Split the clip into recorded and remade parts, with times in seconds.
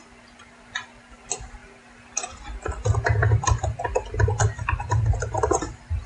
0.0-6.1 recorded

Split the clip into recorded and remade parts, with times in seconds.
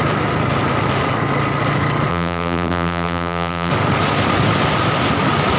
0.0-2.1 recorded; 2.1-3.7 remade; 3.7-5.6 recorded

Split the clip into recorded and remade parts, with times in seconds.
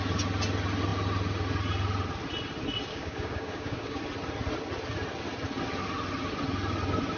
0.0-2.9 recorded; 2.9-4.0 remade; 4.0-7.2 recorded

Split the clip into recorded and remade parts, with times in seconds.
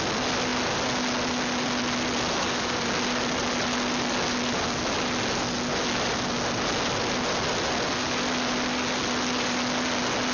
0.0-10.3 recorded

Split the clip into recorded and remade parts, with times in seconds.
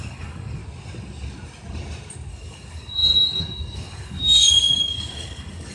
0.0-0.6 remade; 0.6-2.3 recorded; 2.3-5.7 remade